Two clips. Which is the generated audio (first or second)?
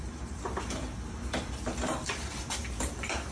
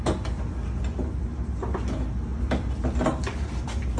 first